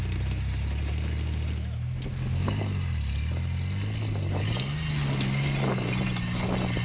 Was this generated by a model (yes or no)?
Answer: no